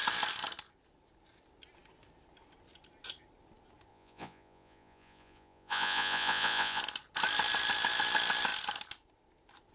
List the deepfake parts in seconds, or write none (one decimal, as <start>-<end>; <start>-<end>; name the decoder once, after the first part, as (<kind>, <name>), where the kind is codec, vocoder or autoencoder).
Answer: 3.9-6.8 (vocoder, Vocos)